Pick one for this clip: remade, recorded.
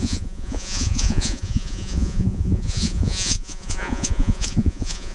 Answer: remade